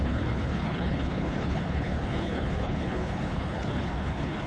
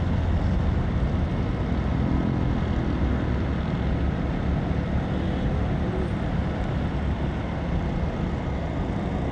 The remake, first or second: first